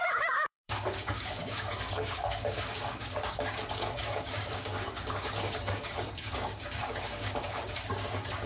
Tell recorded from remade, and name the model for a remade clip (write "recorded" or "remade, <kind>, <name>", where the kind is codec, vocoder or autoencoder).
remade, codec, DAC